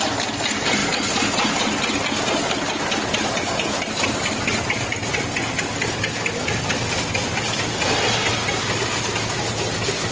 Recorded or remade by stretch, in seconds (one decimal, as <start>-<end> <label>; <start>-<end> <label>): 0.0-10.1 recorded